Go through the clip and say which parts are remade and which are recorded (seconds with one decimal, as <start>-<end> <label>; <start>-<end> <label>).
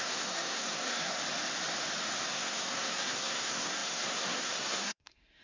0.0-1.2 remade; 1.2-2.3 recorded; 2.3-5.4 remade